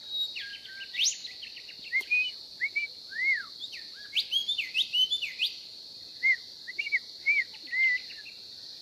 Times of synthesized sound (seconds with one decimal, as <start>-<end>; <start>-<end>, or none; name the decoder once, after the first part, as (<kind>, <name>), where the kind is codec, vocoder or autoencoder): 4.4-8.8 (vocoder, BigVGAN v2)